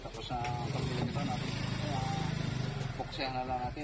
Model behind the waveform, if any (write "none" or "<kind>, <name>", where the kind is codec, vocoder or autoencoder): none